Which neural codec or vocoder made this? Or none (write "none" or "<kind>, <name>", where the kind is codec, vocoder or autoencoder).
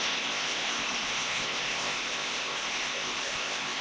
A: codec, ZipCodec